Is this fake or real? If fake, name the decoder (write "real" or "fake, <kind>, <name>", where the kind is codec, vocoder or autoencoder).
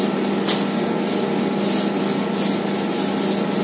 real